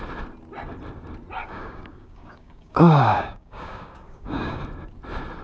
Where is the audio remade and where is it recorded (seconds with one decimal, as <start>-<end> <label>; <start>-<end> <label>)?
0.0-1.4 recorded; 1.4-4.6 remade; 4.6-5.4 recorded